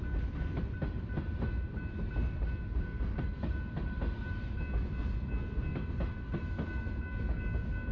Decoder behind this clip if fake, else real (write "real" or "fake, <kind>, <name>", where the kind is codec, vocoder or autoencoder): real